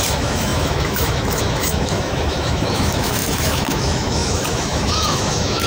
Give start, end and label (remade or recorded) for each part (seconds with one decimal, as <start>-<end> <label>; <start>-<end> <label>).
0.0-5.7 remade